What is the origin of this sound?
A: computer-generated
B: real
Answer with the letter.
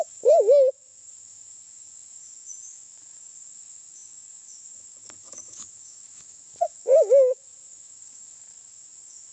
A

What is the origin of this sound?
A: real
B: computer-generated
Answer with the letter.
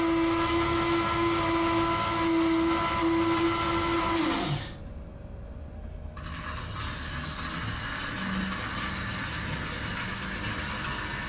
A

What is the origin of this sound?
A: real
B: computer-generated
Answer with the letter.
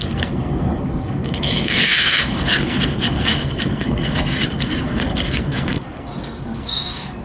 B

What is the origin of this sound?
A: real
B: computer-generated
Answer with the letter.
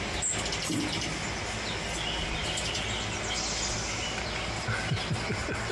A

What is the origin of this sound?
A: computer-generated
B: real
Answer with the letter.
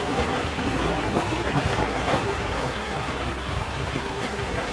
A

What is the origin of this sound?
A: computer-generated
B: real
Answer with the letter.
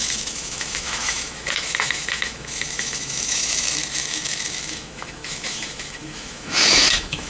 A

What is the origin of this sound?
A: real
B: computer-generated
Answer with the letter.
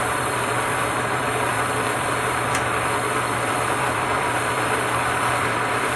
B